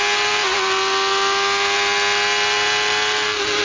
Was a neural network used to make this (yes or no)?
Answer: no